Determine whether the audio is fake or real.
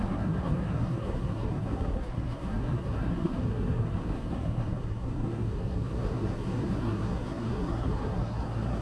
fake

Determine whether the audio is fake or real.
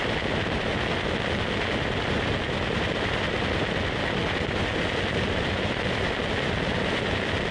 real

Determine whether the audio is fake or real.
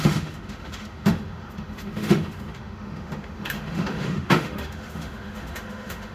fake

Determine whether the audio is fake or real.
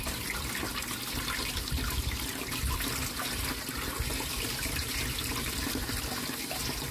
real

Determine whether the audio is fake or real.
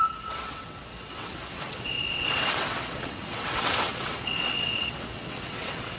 fake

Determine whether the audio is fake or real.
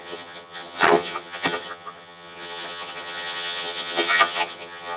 fake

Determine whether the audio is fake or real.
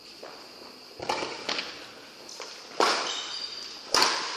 real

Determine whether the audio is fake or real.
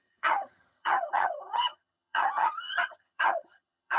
fake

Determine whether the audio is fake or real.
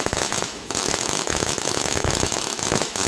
fake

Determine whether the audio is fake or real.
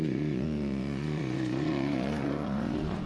fake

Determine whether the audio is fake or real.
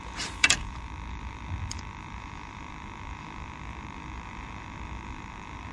fake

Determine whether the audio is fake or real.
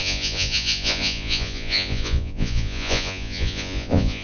fake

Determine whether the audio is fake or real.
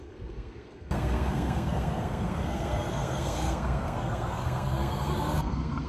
fake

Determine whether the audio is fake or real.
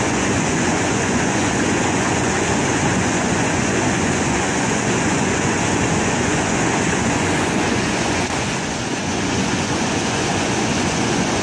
fake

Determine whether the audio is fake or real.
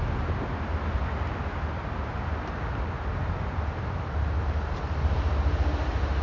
real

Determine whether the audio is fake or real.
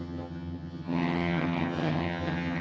fake